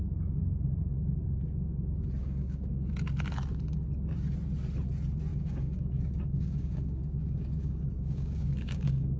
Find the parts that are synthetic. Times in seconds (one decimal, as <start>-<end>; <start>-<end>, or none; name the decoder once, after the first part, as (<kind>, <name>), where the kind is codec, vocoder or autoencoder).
2.2-2.9 (codec, DAC); 5.3-9.2